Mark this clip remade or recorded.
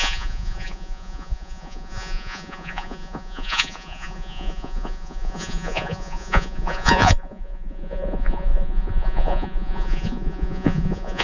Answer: remade